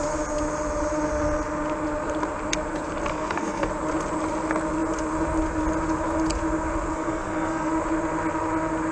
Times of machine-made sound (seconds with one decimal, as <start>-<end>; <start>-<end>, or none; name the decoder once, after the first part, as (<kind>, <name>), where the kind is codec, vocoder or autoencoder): 3.1-3.7 (codec, SNAC); 6.9-7.7

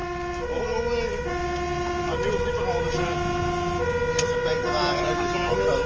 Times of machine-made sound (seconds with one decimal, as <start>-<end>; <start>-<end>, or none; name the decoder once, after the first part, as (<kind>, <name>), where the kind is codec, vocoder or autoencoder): none